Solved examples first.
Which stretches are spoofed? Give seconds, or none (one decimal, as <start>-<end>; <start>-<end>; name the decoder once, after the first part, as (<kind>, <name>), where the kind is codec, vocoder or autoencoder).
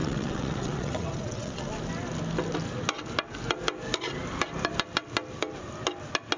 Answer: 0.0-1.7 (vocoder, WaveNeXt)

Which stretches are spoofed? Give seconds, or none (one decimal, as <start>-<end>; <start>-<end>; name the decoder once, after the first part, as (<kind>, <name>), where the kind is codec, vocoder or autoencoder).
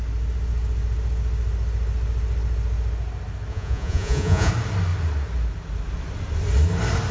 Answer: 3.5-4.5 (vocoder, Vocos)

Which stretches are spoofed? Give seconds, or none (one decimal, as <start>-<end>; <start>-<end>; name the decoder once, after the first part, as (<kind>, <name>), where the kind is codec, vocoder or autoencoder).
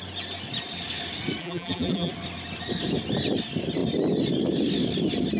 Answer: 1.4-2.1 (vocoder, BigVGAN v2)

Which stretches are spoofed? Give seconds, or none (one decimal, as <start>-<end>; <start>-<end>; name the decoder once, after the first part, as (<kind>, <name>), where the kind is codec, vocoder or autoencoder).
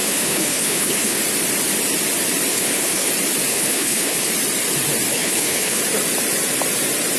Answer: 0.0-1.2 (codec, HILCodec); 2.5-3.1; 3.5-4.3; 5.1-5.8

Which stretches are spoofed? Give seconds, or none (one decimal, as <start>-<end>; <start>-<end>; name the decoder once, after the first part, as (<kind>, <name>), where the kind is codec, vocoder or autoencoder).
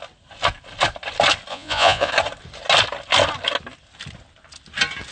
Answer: 1.5-2.1 (vocoder, Vocos)